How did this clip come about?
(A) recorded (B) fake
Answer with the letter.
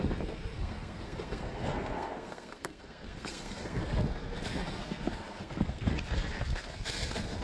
B